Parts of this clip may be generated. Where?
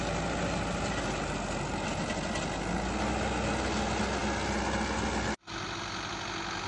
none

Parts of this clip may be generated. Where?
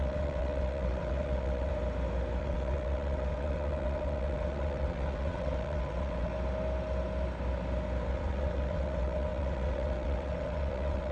0.0-1.7 (vocoder, WaveNeXt); 2.4-6.3; 8.1-11.1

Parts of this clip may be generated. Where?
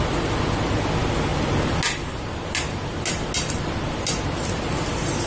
none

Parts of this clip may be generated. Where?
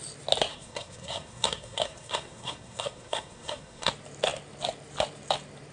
0.5-3.9 (codec, SNAC)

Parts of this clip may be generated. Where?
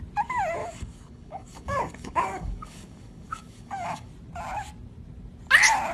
0.6-4.1 (codec, DAC)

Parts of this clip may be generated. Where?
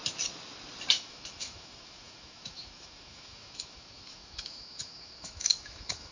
0.9-6.1 (autoencoder, DAC-VAE)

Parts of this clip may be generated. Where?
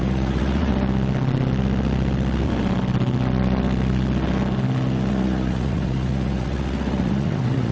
0.0-0.7 (vocoder, Vocos); 5.1-7.7